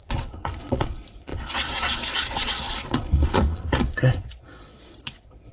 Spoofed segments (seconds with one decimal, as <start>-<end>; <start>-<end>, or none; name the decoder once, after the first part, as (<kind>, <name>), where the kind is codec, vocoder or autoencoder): 0.0-5.5 (vocoder, Vocos)